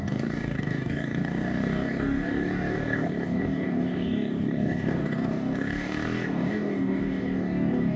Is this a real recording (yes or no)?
no